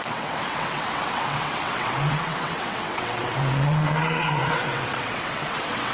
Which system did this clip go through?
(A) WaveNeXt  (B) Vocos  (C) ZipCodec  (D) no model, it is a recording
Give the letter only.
A